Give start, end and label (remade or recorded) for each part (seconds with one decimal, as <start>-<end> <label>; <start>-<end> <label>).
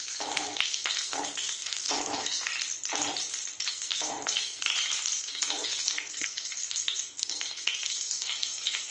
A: 0.0-2.5 remade; 2.5-3.7 recorded; 3.7-4.7 remade; 4.7-5.2 recorded; 5.2-8.9 remade